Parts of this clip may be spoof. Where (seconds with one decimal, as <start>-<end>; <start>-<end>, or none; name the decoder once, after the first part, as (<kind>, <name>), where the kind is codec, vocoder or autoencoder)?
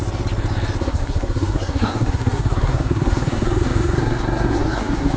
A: 0.8-5.2 (codec, SNAC)